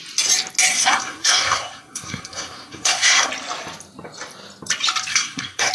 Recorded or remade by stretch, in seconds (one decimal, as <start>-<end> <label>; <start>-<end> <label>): 0.0-0.7 recorded; 0.7-3.3 remade; 3.3-5.1 recorded; 5.1-5.7 remade